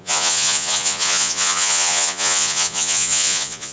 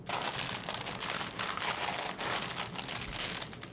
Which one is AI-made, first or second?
first